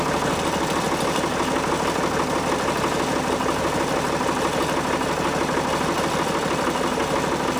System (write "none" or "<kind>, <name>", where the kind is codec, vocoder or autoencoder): none